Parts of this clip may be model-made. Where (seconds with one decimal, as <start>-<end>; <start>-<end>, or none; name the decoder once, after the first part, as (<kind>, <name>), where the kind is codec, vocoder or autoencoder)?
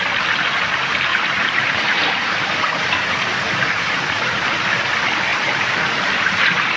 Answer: 1.1-4.8 (vocoder, BigVGAN v2); 5.3-6.3